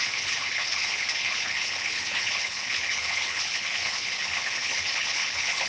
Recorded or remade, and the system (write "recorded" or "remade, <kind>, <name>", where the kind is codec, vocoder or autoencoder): remade, codec, HILCodec